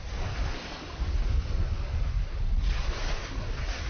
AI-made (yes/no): no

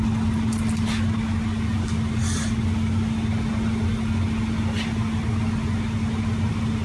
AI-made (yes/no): no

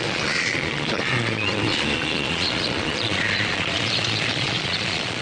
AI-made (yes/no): yes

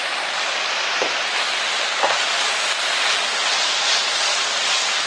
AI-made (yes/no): no